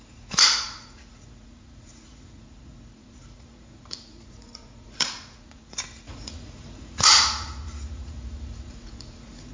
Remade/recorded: remade